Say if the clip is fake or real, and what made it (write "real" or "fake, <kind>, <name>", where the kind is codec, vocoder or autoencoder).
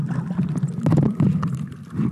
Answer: real